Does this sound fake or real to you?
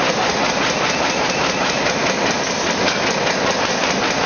real